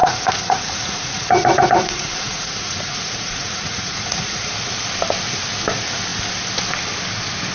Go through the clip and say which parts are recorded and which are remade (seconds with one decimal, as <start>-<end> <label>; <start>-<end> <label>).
0.0-4.5 remade; 4.5-7.5 recorded